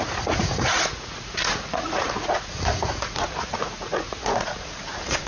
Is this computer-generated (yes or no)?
yes